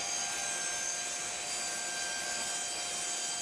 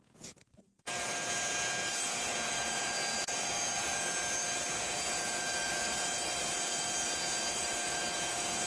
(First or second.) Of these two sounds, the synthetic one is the second